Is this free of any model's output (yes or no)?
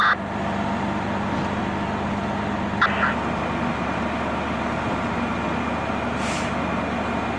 yes